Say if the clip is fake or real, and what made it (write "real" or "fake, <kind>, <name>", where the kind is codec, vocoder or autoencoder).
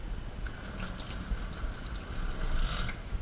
real